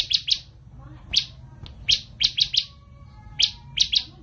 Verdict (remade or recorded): recorded